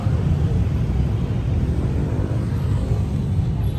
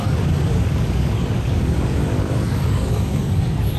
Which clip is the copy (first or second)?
second